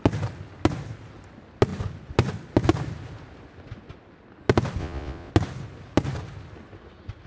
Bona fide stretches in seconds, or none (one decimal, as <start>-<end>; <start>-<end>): 0.0-4.8; 5.3-7.3